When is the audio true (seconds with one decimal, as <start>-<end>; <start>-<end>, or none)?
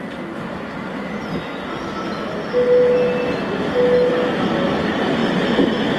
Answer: 0.0-6.0